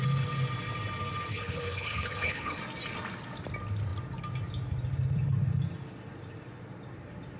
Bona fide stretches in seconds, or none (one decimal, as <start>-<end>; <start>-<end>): 0.0-1.3; 2.6-7.4